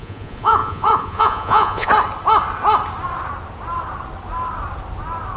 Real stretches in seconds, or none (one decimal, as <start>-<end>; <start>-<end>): 1.9-5.4